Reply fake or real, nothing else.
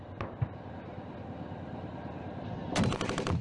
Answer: real